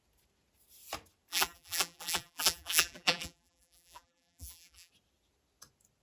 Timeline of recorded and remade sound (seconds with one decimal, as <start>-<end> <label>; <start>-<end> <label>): 0.0-1.3 recorded; 1.3-4.9 remade; 4.9-6.0 recorded